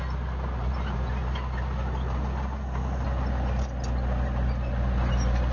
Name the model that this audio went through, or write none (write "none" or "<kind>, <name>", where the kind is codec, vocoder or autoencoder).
none